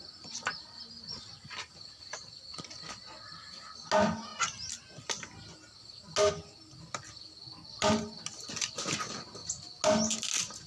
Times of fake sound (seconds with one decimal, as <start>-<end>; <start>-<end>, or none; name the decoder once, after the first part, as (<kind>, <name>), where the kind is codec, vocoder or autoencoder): none